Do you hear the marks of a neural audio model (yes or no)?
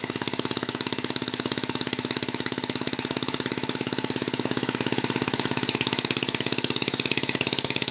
yes